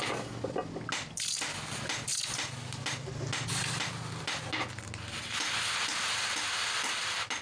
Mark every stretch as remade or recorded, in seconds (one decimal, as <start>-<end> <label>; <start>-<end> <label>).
0.0-7.4 recorded